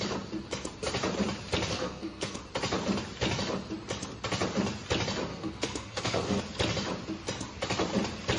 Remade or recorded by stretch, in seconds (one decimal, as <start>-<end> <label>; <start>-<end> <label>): 0.0-1.7 recorded; 1.7-2.4 remade; 2.4-5.3 recorded; 5.3-6.4 remade; 6.4-8.4 recorded